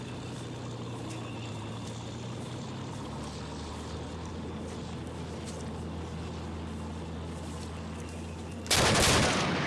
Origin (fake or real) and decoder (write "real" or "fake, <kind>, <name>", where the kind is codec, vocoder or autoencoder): real